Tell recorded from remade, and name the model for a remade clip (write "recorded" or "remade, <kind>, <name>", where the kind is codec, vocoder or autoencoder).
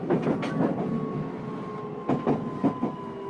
recorded